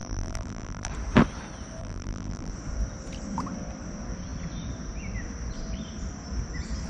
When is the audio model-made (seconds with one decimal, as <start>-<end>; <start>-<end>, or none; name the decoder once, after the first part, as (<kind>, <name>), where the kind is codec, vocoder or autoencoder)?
0.0-0.9 (vocoder, BigVGAN v2); 1.8-2.5

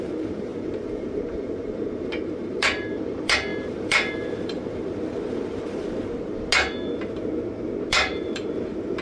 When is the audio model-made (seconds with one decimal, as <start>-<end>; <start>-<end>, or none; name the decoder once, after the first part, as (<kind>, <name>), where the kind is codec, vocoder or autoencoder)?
0.0-6.0 (vocoder, BigVGAN v2); 7.9-9.0

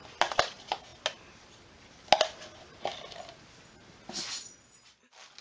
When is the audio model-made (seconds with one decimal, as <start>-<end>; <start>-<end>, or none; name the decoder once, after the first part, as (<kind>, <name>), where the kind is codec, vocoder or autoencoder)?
none

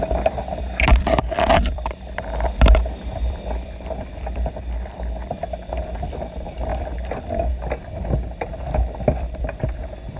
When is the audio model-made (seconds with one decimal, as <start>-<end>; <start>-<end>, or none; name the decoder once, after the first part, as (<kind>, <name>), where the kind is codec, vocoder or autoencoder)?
0.0-10.2 (vocoder, BigVGAN v2)